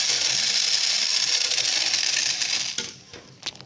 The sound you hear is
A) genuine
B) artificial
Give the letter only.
A